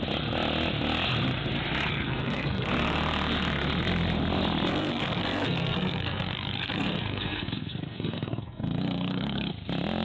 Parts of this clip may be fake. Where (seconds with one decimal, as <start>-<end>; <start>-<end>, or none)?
1.9-2.7; 4.7-9.5